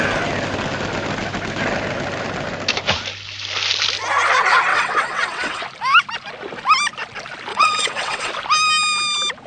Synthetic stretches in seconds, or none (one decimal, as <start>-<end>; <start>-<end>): 4.7-5.6; 7.5-8.3